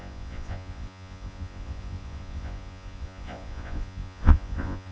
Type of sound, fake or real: fake